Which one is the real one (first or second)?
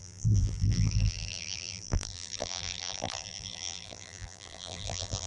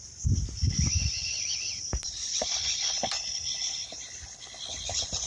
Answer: second